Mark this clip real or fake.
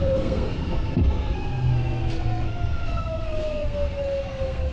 fake